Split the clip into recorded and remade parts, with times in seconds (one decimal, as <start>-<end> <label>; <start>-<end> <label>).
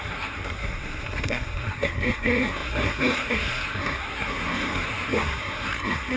0.0-6.2 remade